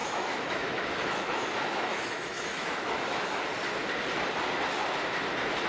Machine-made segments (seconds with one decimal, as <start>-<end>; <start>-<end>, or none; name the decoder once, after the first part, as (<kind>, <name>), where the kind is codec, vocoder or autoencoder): 0.0-3.4 (autoencoder, DAC-VAE)